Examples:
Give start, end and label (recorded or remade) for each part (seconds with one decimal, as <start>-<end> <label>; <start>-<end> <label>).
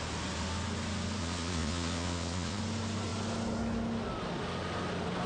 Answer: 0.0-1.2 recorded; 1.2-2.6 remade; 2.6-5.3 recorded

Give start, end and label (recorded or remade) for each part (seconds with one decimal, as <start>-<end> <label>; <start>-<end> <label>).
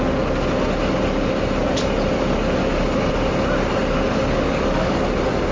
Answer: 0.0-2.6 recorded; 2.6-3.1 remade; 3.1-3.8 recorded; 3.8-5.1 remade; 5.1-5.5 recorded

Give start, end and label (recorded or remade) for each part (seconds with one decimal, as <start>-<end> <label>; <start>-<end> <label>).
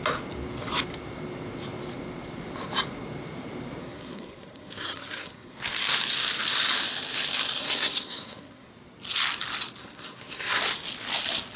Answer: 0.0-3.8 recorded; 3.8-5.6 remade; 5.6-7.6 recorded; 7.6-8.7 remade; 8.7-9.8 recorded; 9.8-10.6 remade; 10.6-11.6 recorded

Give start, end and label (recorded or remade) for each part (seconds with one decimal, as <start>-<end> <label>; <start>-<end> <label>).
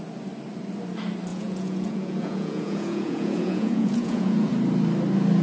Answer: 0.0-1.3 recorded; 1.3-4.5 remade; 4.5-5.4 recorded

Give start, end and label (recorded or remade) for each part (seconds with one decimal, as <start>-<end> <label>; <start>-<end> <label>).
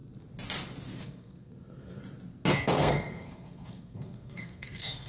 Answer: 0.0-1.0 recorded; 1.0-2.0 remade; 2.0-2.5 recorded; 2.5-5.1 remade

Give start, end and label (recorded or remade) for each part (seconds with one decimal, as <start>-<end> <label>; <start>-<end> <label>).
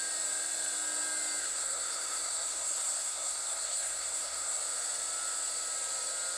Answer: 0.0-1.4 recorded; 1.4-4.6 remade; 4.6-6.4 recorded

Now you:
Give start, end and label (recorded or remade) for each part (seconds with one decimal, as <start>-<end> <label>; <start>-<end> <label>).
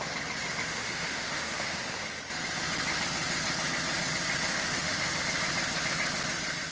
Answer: 0.0-0.7 recorded; 0.7-2.2 remade; 2.2-4.5 recorded; 4.5-5.2 remade; 5.2-6.7 recorded